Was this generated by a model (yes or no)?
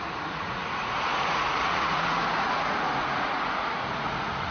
yes